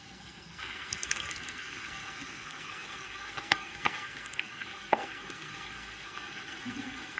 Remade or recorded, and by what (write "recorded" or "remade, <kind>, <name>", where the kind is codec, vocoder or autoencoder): remade, codec, SNAC